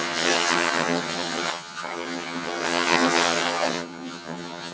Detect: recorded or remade remade